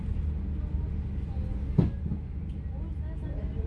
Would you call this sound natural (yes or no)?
yes